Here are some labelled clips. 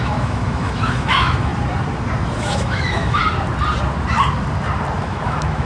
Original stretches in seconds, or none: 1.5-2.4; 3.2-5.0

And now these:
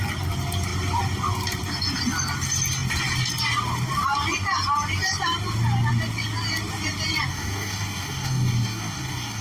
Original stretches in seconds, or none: 0.0-7.3